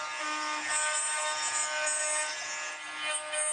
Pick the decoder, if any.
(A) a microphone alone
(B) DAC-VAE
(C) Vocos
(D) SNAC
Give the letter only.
A